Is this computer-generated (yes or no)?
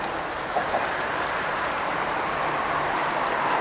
yes